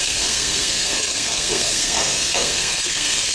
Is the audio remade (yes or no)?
yes